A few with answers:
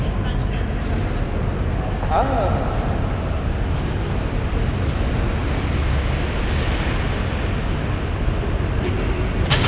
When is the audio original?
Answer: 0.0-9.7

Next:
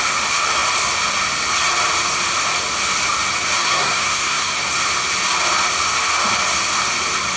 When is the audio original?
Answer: 0.0-3.6; 4.6-7.4

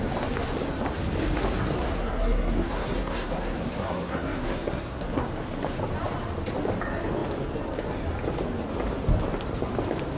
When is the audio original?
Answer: 0.0-1.8; 5.3-10.2

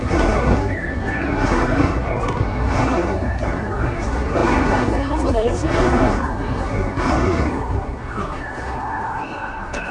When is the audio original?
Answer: none